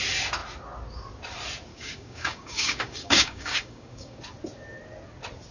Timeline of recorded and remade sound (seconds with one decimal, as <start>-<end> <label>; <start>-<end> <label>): 0.0-1.7 recorded; 1.7-4.2 remade; 4.2-5.5 recorded